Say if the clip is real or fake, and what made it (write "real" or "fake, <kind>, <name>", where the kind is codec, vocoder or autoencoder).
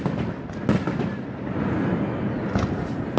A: real